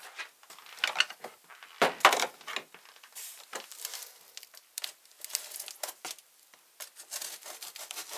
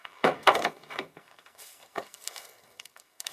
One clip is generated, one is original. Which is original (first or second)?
first